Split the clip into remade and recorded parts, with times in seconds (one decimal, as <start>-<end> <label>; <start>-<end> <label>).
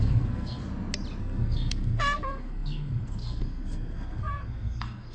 0.0-0.6 remade; 0.6-1.2 recorded; 1.2-5.1 remade